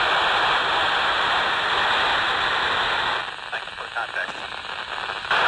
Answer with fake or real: real